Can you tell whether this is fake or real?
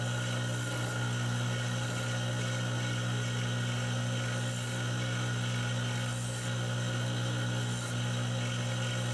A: real